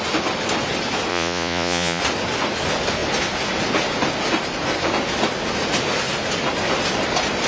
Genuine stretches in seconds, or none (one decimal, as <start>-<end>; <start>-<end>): 0.0-1.1; 2.0-7.5